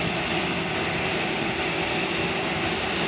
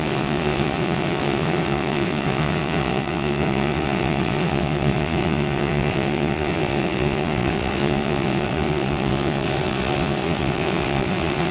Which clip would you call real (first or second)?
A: first